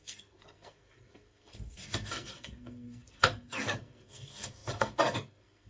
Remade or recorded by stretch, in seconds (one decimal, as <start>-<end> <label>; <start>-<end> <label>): 0.0-5.7 remade